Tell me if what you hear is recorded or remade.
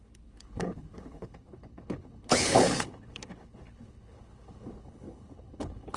remade